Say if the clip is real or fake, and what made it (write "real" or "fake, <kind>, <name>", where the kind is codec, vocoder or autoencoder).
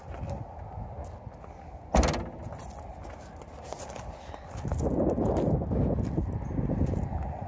real